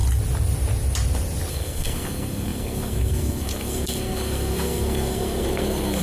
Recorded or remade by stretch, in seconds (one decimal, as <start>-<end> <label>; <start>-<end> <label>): 0.0-1.5 recorded; 1.5-6.0 remade